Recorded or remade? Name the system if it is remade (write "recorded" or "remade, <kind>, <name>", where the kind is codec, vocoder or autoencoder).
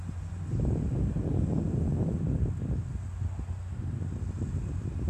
recorded